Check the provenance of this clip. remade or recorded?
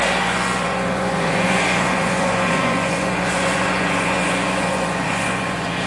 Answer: remade